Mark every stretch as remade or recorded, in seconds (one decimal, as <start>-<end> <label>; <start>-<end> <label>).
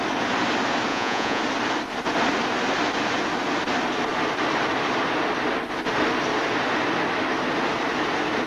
0.0-0.9 recorded; 0.9-1.4 remade; 1.4-8.5 recorded